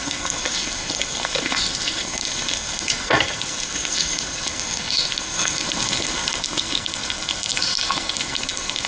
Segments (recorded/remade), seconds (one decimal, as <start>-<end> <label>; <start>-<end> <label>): 0.0-8.9 remade

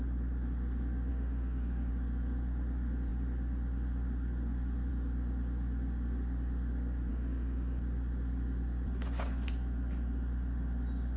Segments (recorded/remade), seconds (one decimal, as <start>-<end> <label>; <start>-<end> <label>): 0.0-1.1 recorded; 1.1-1.9 remade; 1.9-7.1 recorded; 7.1-7.8 remade; 7.8-11.2 recorded

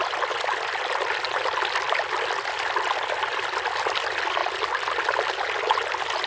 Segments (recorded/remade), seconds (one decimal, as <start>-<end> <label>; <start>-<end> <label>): 0.0-6.3 recorded

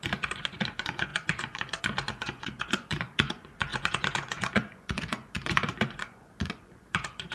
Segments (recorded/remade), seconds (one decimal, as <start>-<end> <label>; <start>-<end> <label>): 0.0-7.3 remade